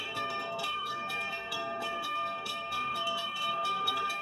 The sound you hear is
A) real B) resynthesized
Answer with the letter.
B